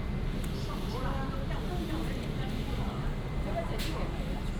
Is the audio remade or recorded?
recorded